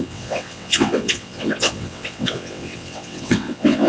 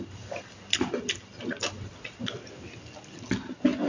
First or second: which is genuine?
second